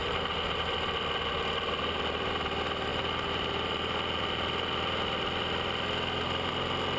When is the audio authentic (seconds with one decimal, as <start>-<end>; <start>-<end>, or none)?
0.0-7.0